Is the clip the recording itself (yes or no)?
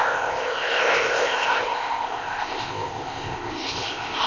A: no